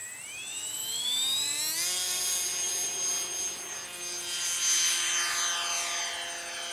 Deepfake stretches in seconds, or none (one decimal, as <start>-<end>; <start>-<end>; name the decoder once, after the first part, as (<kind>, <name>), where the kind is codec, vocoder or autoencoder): 0.0-1.6 (vocoder, BigVGAN v2)